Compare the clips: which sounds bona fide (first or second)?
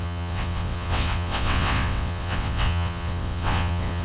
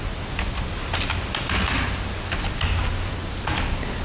second